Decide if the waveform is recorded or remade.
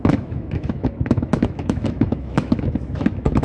remade